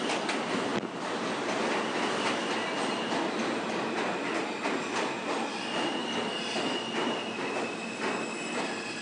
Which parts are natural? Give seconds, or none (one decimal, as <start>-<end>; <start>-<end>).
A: 0.0-9.0